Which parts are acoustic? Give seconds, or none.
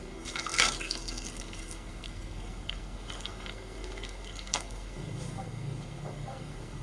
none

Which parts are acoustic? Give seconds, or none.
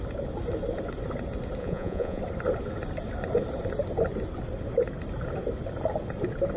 0.0-1.6; 2.2-6.6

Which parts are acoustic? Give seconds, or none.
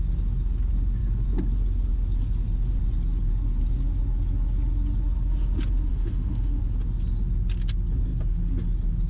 0.0-5.9; 6.6-9.1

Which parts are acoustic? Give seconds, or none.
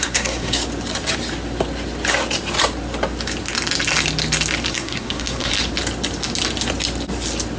0.6-4.7; 5.5-7.6